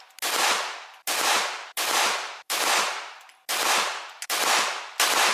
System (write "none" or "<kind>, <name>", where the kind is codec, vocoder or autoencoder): none